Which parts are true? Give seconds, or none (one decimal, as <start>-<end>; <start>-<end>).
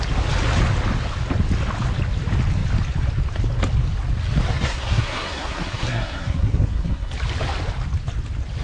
0.0-4.5; 7.1-8.6